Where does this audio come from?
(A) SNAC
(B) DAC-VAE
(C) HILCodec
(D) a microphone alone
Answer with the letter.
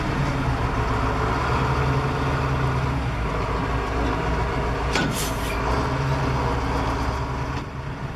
D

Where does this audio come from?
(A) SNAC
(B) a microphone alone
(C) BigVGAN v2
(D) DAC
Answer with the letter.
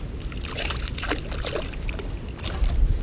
B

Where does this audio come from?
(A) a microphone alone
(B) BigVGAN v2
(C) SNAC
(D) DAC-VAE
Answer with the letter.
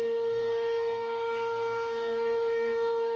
C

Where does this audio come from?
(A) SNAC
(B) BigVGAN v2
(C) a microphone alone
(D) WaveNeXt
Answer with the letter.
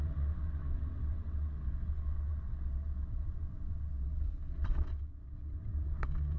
D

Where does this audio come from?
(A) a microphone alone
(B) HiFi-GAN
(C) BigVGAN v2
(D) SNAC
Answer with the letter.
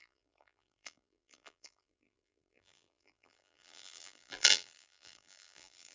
C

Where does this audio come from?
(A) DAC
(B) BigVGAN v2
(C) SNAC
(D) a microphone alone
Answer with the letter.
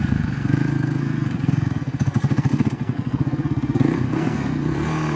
C